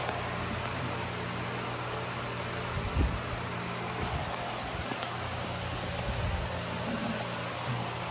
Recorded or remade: recorded